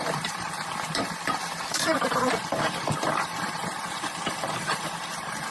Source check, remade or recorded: remade